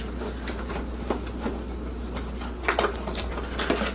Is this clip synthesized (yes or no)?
no